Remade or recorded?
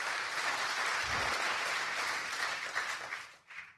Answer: remade